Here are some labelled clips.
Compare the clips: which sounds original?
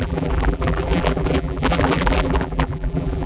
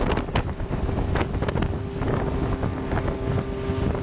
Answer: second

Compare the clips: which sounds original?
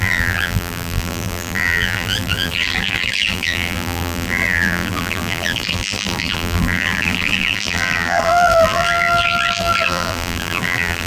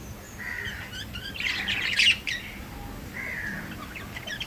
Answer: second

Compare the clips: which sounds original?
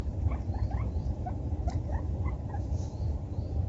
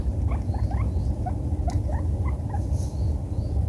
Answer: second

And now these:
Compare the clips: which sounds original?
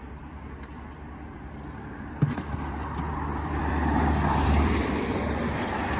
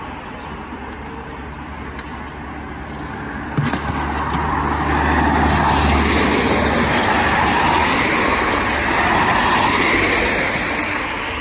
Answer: second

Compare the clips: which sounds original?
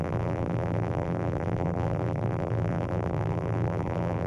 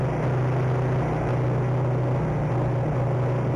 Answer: second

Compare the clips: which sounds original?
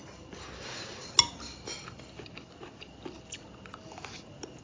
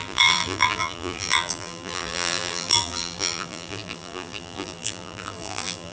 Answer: first